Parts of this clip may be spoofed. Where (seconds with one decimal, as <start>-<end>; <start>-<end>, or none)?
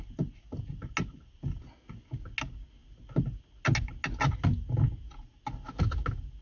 none